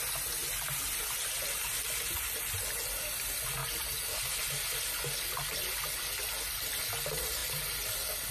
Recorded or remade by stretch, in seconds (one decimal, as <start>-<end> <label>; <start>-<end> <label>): 0.0-8.3 recorded